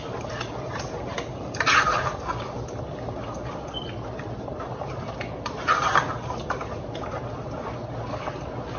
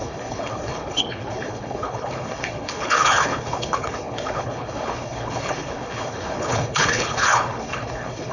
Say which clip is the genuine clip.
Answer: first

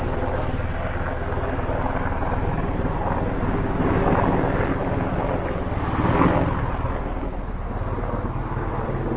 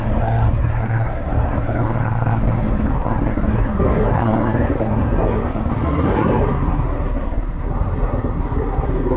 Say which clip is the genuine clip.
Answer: first